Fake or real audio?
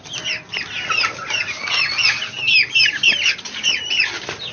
real